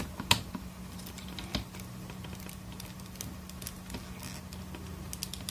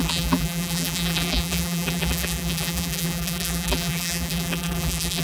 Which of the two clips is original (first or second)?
first